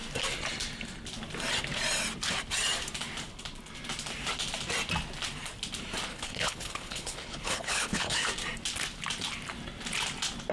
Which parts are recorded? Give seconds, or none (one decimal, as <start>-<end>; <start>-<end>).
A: 0.0-6.1; 8.3-10.5